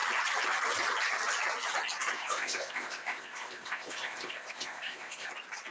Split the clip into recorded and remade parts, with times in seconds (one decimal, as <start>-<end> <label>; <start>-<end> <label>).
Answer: 0.0-2.1 recorded; 2.1-5.3 remade; 5.3-5.7 recorded